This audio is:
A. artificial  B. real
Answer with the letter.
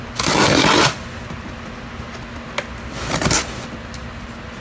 B